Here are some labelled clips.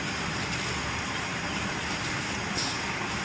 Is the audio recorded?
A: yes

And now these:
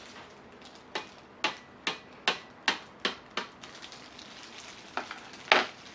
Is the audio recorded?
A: yes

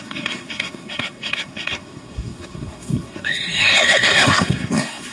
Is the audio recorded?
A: no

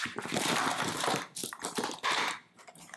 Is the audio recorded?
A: no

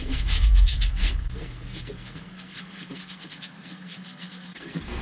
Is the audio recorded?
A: no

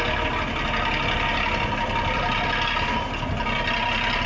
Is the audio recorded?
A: yes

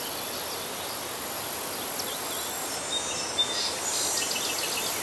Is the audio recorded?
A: yes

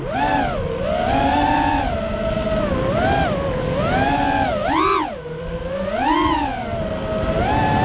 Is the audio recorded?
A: yes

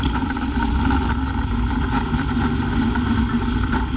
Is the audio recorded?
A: yes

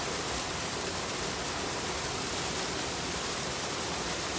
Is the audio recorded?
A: yes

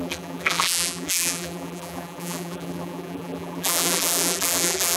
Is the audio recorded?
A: no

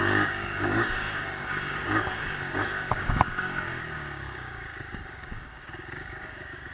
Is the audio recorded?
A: no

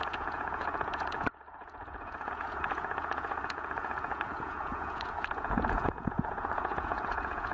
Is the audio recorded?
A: no